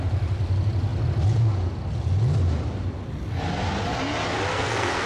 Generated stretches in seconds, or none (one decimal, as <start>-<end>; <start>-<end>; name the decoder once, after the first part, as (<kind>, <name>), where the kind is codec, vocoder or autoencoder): 4.5-5.1 (codec, SNAC)